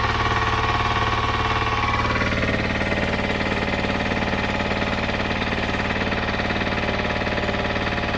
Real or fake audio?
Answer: real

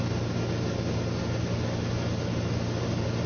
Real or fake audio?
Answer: real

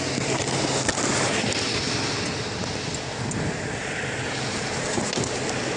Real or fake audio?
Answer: real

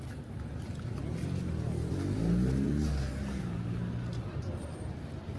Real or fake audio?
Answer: real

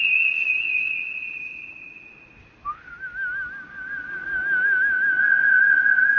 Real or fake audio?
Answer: real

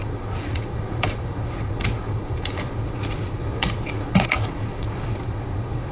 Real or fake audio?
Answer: fake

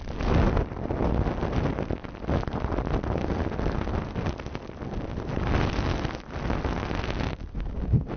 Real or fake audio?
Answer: real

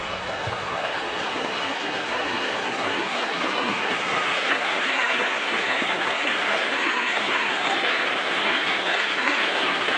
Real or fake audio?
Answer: fake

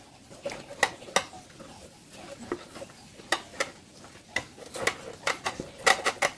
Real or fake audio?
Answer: real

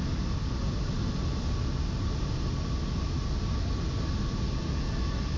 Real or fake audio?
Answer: real